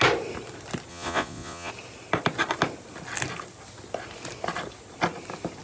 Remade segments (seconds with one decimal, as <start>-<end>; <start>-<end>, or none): 0.9-1.7